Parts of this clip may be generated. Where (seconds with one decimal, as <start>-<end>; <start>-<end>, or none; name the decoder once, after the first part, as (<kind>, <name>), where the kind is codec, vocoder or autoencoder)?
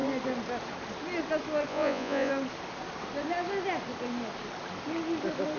1.7-2.3 (vocoder, Vocos)